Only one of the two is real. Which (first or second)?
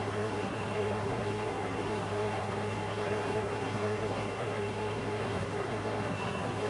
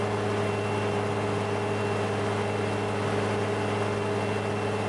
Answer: second